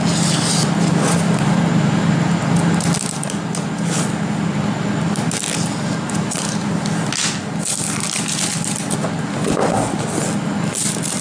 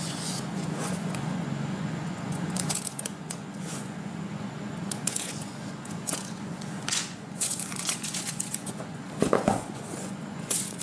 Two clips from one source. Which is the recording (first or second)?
first